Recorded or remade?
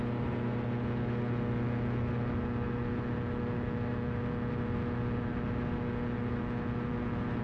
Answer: recorded